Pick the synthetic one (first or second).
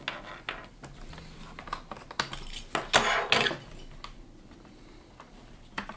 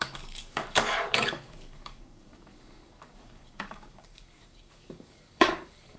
second